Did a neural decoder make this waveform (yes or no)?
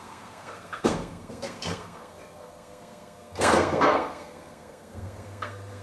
yes